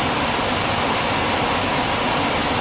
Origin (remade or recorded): recorded